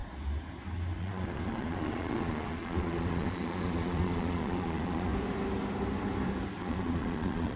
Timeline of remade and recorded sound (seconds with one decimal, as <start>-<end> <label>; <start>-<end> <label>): 0.0-1.0 recorded; 1.0-5.1 remade; 5.1-6.6 recorded; 6.6-7.6 remade